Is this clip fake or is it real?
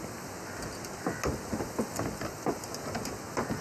real